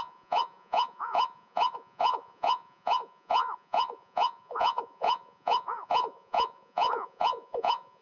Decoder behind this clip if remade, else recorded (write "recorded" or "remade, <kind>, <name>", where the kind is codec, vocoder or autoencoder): remade, vocoder, Vocos